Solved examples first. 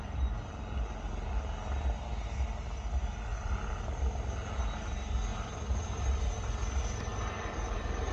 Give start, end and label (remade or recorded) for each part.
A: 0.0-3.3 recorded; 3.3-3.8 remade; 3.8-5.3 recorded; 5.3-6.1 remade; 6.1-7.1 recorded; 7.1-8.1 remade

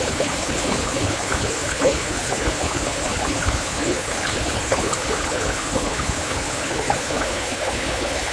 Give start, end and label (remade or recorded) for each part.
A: 0.0-8.3 remade

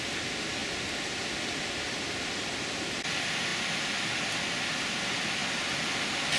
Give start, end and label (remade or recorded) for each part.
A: 0.0-6.4 recorded

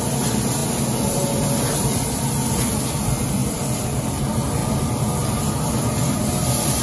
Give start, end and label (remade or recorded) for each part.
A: 0.0-6.8 recorded